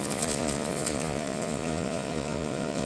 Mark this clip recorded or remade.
remade